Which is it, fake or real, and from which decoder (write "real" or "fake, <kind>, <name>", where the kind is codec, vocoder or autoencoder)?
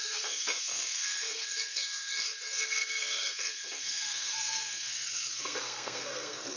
fake, codec, SNAC